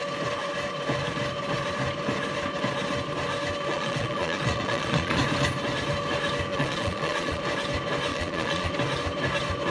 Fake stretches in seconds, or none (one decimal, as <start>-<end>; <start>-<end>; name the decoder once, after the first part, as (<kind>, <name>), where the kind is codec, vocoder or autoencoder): 3.7-5.2 (vocoder, Vocos); 6.5-7.4; 8.1-8.7